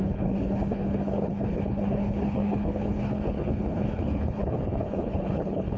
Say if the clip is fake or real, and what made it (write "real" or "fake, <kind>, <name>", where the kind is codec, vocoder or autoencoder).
fake, codec, HILCodec